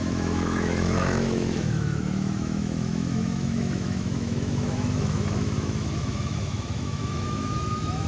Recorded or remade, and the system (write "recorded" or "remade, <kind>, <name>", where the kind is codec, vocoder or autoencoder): remade, autoencoder, DAC-VAE